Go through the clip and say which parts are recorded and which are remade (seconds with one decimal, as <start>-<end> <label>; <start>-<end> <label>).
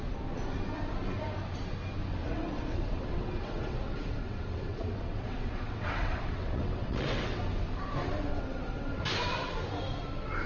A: 0.0-2.2 recorded; 2.2-7.4 remade; 7.4-8.3 recorded; 8.3-9.0 remade; 9.0-10.5 recorded